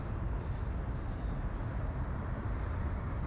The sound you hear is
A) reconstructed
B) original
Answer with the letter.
B